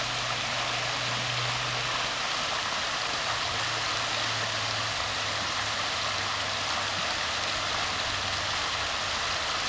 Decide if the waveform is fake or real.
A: real